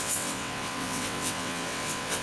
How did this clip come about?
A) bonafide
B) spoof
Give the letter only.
B